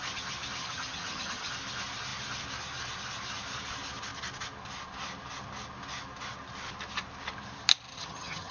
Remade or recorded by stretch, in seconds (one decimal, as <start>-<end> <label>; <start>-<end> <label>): 0.0-0.6 recorded; 0.6-1.5 remade; 1.5-7.9 recorded; 7.9-8.5 remade